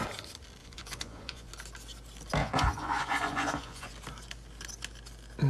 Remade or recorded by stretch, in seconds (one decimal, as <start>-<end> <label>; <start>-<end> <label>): 0.0-0.6 recorded; 0.6-1.5 remade; 1.5-2.4 recorded; 2.4-3.9 remade; 3.9-5.5 recorded